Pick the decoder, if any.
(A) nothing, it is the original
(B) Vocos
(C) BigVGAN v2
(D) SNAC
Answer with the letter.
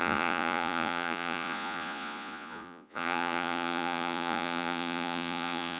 B